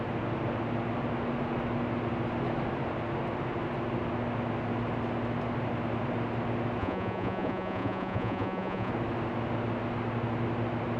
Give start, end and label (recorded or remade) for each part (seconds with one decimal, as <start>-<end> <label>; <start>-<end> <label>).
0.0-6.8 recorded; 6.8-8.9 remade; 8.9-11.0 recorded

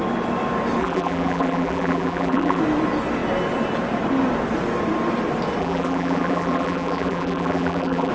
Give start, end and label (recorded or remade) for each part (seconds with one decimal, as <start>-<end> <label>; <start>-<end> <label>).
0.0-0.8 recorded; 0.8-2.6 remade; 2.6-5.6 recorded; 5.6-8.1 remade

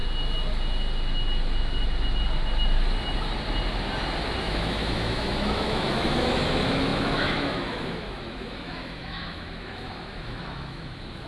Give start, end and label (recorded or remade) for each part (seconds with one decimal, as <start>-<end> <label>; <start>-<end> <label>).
0.0-4.4 recorded; 4.4-11.3 remade